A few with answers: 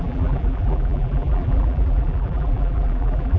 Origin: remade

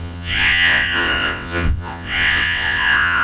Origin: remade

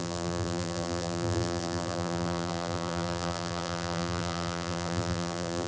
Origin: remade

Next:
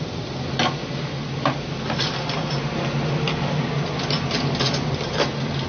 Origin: recorded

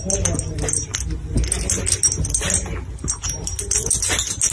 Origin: recorded